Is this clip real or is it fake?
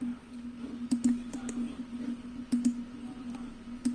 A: real